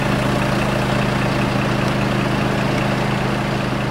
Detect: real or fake real